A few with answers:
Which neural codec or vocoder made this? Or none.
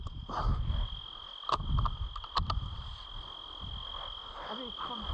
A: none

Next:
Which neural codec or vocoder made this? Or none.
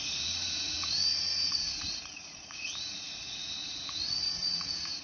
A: vocoder, Vocos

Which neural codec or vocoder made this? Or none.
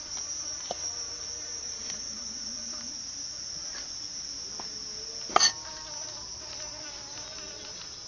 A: none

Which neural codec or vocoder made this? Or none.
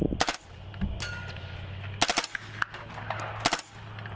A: none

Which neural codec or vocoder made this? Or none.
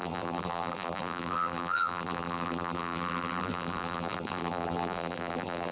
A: vocoder, BigVGAN v2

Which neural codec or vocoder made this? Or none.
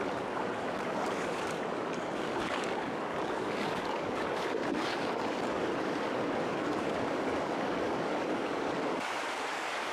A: codec, DAC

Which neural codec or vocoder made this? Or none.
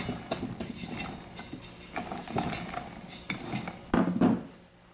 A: none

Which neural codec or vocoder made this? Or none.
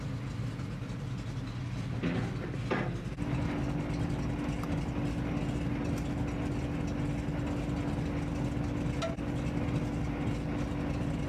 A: none